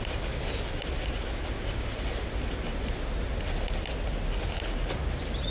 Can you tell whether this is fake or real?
real